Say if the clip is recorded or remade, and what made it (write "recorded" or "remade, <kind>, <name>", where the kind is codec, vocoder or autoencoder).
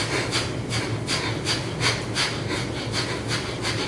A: recorded